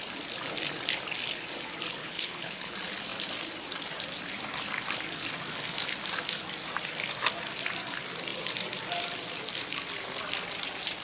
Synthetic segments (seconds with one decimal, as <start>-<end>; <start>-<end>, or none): 2.0-2.7